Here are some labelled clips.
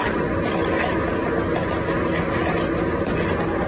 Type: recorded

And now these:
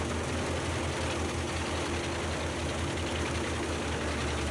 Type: recorded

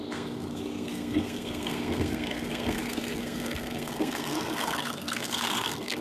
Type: remade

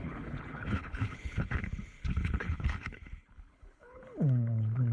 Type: remade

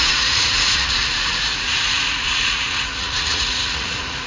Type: remade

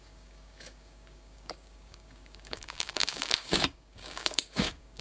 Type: remade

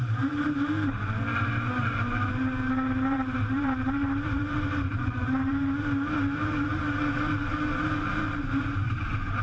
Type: remade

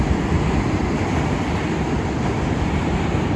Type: recorded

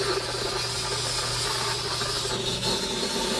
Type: recorded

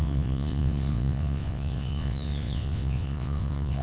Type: remade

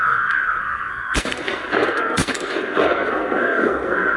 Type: remade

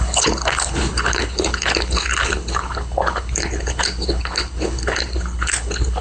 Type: remade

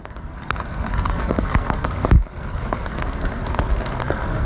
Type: remade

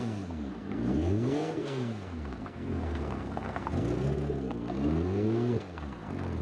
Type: remade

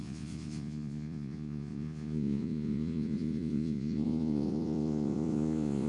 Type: remade